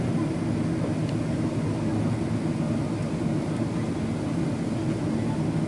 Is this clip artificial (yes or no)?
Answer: no